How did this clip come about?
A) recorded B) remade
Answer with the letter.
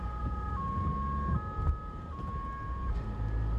A